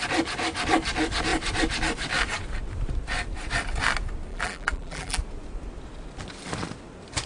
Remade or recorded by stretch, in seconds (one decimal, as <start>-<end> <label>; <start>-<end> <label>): 0.0-4.3 recorded; 4.3-5.2 remade; 5.2-7.3 recorded